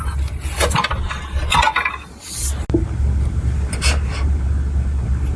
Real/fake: real